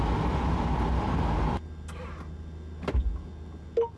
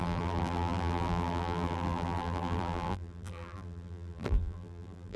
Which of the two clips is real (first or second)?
first